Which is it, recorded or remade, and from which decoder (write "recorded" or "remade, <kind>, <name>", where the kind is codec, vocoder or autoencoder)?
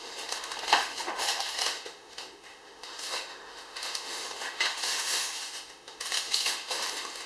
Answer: remade, autoencoder, DAC-VAE